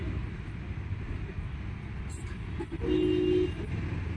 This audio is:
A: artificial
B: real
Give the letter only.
B